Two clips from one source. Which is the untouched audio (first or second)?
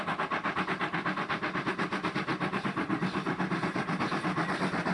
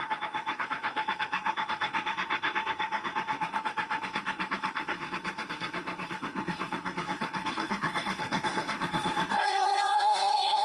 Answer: first